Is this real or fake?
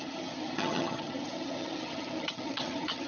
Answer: fake